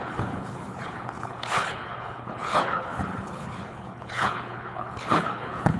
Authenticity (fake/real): fake